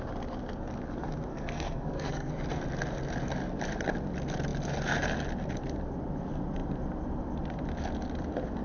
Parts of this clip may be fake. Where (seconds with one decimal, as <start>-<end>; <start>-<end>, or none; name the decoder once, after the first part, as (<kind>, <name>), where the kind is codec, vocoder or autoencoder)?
1.3-2.3 (codec, SNAC)